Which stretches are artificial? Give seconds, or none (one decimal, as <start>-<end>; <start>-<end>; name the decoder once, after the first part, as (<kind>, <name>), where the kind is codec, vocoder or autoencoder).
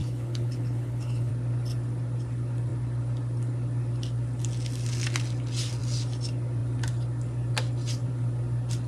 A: 0.0-1.3 (codec, HILCodec)